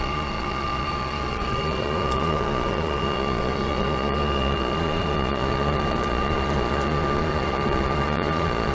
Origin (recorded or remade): remade